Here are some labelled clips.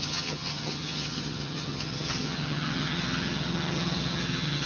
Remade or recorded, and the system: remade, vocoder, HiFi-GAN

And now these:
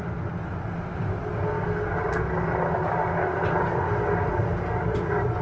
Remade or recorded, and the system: recorded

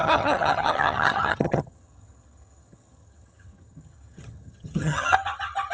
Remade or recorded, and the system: remade, vocoder, HiFi-GAN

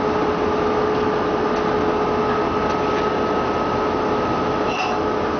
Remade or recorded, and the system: recorded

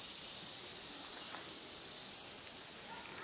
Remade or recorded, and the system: recorded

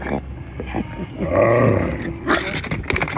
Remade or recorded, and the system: recorded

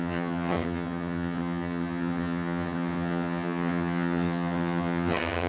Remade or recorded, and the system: remade, vocoder, HiFi-GAN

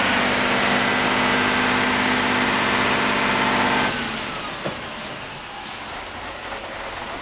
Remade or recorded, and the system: recorded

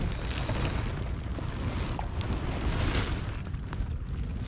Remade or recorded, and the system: recorded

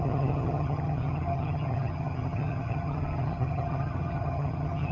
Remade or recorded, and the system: remade, vocoder, HiFi-GAN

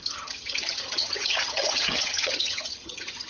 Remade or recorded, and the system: remade, vocoder, HiFi-GAN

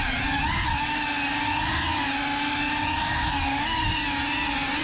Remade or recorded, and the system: recorded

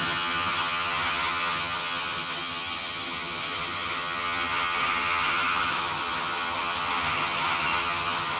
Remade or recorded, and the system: remade, vocoder, HiFi-GAN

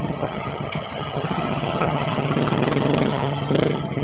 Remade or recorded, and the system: remade, vocoder, HiFi-GAN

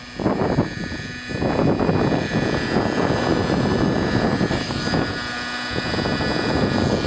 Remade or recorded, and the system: recorded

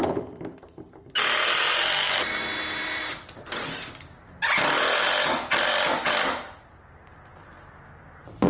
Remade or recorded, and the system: recorded